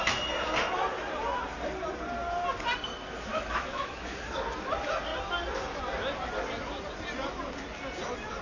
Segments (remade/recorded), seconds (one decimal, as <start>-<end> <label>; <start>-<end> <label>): 0.0-3.3 recorded; 3.3-4.3 remade; 4.3-8.4 recorded